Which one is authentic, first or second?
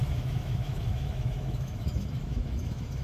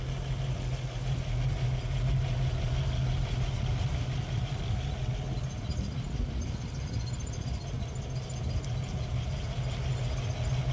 second